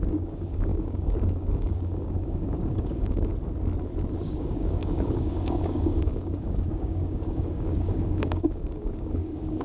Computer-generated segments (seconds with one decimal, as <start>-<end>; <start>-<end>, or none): 0.0-3.3; 4.2-9.6